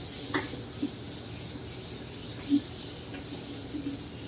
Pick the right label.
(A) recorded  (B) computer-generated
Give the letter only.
A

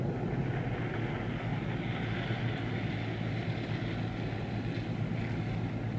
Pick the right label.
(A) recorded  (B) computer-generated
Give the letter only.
A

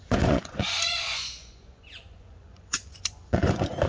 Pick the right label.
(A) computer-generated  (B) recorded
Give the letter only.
A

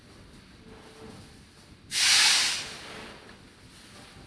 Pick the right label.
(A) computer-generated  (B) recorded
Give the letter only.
B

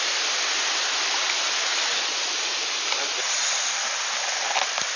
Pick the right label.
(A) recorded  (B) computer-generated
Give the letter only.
A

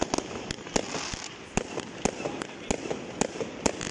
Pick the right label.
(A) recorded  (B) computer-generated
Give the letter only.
A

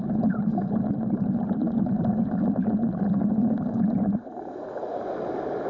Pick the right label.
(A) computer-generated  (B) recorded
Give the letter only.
B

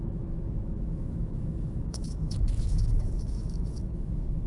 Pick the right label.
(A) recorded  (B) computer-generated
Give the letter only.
B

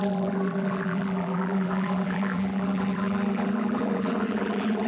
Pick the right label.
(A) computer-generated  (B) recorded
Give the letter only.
A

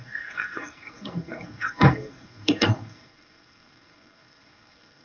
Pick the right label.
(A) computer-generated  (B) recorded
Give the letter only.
A